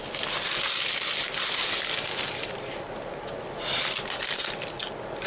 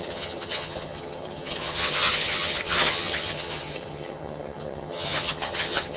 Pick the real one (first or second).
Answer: first